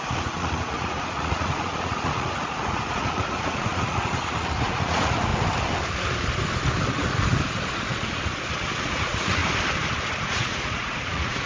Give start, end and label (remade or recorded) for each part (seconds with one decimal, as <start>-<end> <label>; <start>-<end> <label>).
0.0-5.3 remade; 5.3-8.8 recorded; 8.8-9.4 remade; 9.4-10.2 recorded; 10.2-11.5 remade